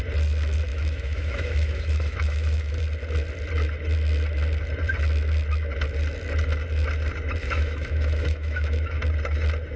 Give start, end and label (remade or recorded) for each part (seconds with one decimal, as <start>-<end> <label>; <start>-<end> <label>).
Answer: 0.0-0.7 recorded; 0.7-2.8 remade; 2.8-7.4 recorded; 7.4-9.0 remade; 9.0-9.8 recorded